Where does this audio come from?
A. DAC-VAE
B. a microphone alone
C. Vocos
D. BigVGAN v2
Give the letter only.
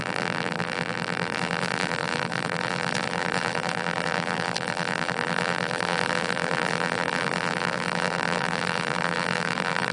D